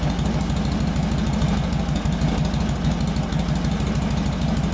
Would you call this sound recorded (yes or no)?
yes